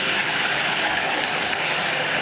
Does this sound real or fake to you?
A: fake